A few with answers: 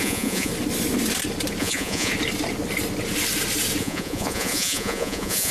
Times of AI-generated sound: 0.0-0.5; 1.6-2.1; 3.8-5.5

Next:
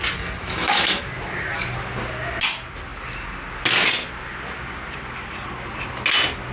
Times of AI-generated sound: 0.4-1.0

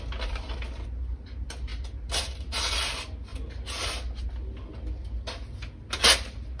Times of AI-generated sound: none

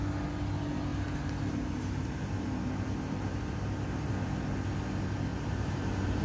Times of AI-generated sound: 0.9-4.1; 5.3-6.2